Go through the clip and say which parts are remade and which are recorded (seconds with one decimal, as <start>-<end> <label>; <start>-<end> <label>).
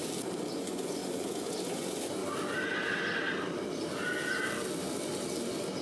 0.0-0.5 recorded; 0.5-2.2 remade; 2.2-5.8 recorded